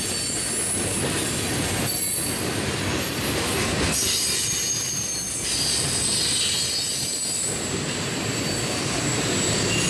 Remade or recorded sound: recorded